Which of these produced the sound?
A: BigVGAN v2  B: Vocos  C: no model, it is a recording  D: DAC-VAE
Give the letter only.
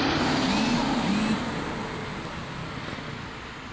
C